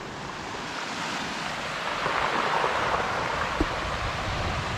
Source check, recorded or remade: recorded